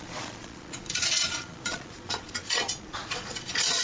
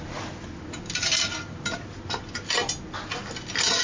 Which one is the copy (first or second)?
first